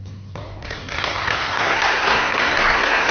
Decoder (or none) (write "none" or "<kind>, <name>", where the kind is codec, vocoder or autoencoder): codec, SNAC